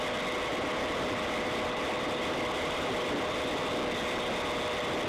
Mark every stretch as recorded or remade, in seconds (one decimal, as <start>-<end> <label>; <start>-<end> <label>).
0.0-0.5 recorded; 0.5-3.6 remade; 3.6-5.1 recorded